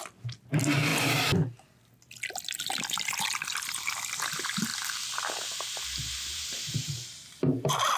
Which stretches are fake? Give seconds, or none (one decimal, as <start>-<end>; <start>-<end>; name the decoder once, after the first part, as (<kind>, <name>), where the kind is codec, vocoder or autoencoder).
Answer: none